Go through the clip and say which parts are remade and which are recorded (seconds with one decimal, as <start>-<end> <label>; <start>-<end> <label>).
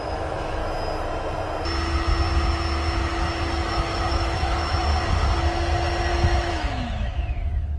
0.0-0.6 remade; 0.6-3.7 recorded; 3.7-4.9 remade; 4.9-6.1 recorded; 6.1-7.8 remade